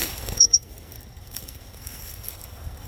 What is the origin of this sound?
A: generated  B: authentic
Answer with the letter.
A